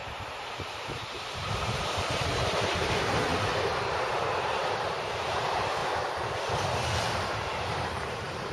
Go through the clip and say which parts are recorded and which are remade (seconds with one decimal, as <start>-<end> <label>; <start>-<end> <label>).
0.0-5.8 remade; 5.8-7.1 recorded; 7.1-8.5 remade